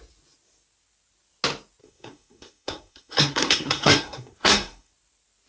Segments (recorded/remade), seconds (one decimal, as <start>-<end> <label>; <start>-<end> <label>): 0.0-1.8 recorded; 1.8-4.9 remade; 4.9-5.5 recorded